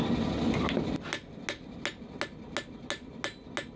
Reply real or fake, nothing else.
real